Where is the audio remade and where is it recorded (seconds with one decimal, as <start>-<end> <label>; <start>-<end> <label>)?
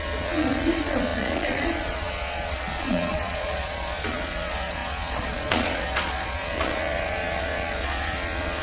0.0-8.6 remade